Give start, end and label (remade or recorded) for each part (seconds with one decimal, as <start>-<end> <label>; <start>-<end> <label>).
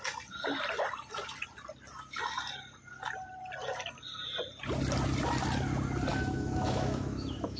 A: 0.0-6.1 recorded; 6.1-7.6 remade